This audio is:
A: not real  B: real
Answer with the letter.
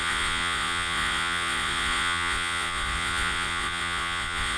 A